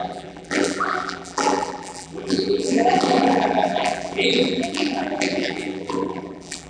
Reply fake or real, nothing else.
fake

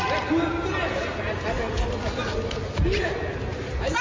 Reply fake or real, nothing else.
real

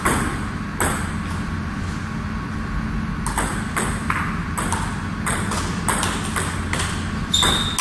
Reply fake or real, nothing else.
real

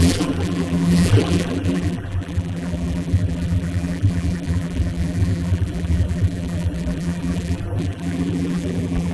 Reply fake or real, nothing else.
fake